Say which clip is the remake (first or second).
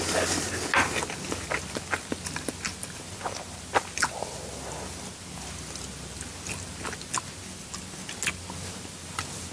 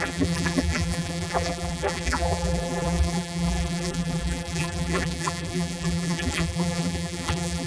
second